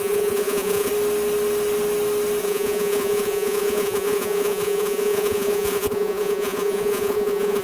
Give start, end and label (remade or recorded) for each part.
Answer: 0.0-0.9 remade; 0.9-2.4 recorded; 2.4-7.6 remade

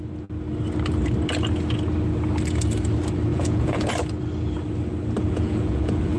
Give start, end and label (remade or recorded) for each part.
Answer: 0.0-3.3 recorded; 3.3-3.9 remade; 3.9-5.2 recorded; 5.2-6.2 remade

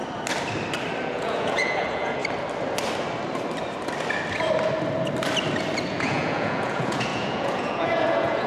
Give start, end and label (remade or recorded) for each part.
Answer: 0.0-1.0 recorded; 1.0-2.2 remade; 2.2-5.9 recorded; 5.9-8.5 remade

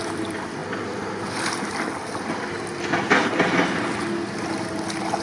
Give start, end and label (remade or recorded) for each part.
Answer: 0.0-5.2 recorded

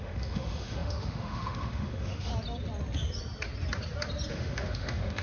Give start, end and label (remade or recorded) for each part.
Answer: 0.0-2.3 remade; 2.3-4.3 recorded; 4.3-5.2 remade

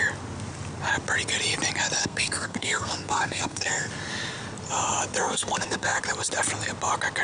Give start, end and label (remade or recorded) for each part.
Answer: 0.0-2.0 recorded; 2.0-3.9 remade; 3.9-5.2 recorded; 5.2-6.0 remade; 6.0-7.2 recorded

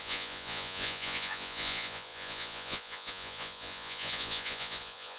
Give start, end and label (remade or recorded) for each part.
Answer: 0.0-5.2 remade

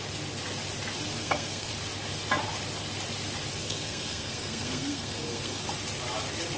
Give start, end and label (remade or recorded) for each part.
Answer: 0.0-1.2 recorded; 1.2-1.7 remade; 1.7-3.6 recorded; 3.6-5.6 remade; 5.6-6.6 recorded